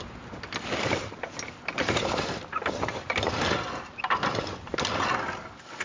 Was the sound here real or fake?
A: real